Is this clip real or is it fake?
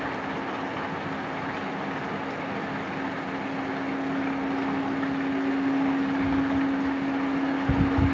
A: real